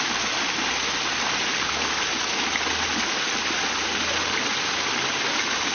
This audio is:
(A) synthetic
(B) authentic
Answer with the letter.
B